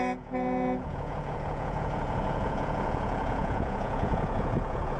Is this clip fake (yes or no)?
yes